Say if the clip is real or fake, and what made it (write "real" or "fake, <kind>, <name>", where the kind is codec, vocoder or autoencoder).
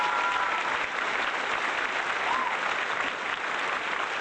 real